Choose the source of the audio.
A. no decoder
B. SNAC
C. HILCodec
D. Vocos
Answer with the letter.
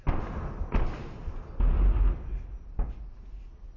A